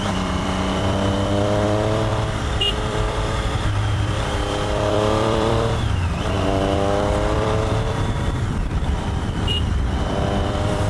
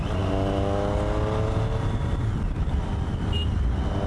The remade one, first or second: first